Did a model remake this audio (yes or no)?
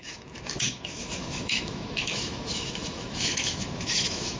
yes